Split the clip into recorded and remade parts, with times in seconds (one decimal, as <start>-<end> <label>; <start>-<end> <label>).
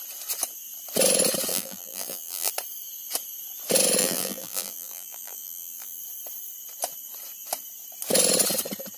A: 0.0-1.5 recorded; 1.5-2.5 remade; 2.5-4.0 recorded; 4.0-6.0 remade; 6.0-9.0 recorded